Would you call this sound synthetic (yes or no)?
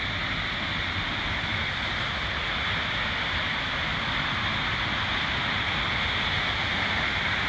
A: no